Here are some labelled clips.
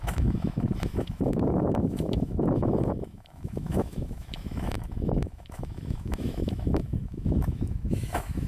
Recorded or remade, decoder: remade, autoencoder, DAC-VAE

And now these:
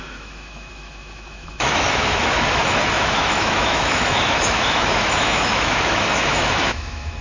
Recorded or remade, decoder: remade, autoencoder, DAC-VAE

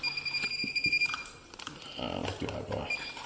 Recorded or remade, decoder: recorded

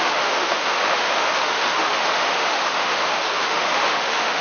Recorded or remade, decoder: remade, autoencoder, DAC-VAE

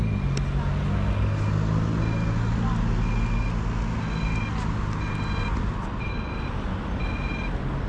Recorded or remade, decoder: recorded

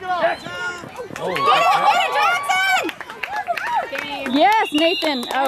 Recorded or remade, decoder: recorded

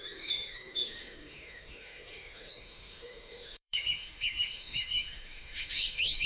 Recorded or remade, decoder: remade, autoencoder, DAC-VAE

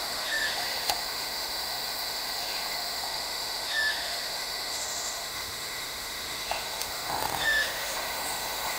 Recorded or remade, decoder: remade, autoencoder, DAC-VAE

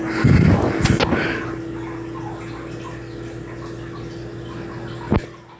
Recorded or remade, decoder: recorded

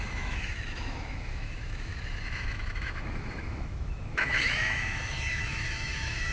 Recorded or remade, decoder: remade, autoencoder, DAC-VAE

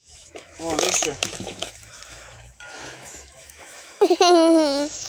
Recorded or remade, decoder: remade, autoencoder, DAC-VAE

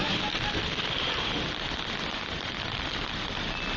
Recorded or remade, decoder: recorded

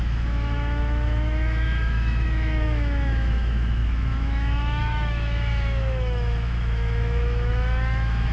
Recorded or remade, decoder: remade, autoencoder, DAC-VAE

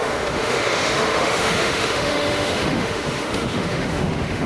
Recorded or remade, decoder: remade, autoencoder, DAC-VAE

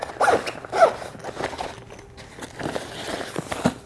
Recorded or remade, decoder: recorded